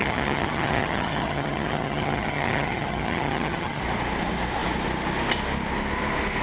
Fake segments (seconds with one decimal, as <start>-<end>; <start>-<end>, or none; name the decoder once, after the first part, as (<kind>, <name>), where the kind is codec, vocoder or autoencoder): 0.0-3.8 (vocoder, HiFi-GAN)